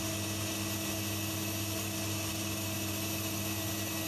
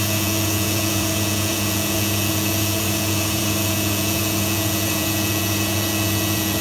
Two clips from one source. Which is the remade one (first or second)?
second